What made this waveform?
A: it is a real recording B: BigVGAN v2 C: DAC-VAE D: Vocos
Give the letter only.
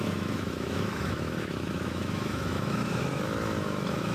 C